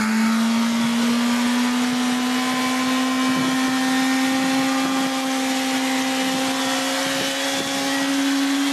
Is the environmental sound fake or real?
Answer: real